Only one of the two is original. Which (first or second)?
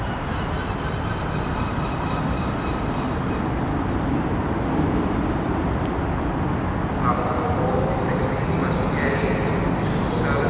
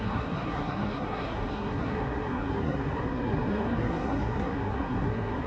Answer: first